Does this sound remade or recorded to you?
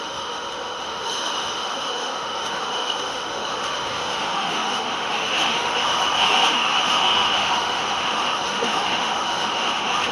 remade